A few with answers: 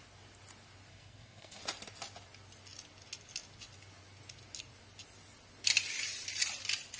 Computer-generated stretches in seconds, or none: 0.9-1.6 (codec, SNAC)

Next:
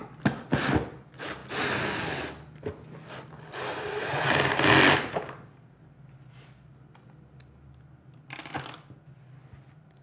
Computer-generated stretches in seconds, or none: none

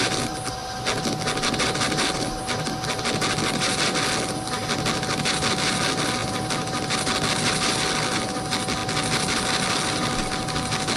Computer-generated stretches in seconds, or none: none